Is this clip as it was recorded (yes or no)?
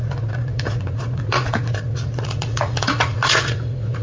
no